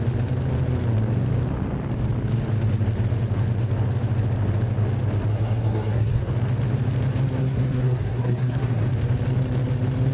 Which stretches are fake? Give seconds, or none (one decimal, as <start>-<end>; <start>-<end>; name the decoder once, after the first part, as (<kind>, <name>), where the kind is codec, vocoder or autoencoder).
5.3-6.3 (codec, SNAC); 7.4-8.8